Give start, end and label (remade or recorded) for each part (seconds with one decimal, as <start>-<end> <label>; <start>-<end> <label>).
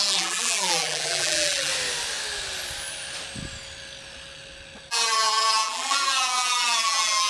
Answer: 0.0-1.7 remade; 1.7-4.9 recorded; 4.9-7.3 remade